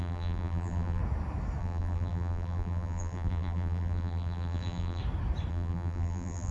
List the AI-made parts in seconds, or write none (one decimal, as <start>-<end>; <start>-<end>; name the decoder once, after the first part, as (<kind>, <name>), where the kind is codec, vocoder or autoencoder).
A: 0.0-1.0 (vocoder, BigVGAN v2); 1.6-5.0; 5.5-6.5